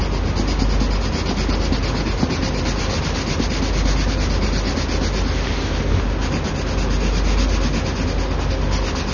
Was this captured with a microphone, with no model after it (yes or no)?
yes